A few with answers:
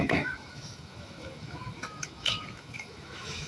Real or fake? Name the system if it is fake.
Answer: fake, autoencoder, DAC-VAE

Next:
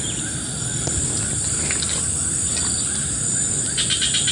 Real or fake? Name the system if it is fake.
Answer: fake, vocoder, BigVGAN v2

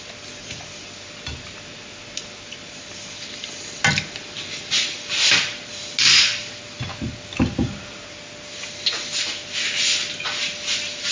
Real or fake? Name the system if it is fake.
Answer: real